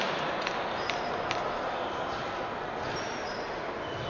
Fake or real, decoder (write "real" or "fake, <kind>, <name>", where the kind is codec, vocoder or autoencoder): real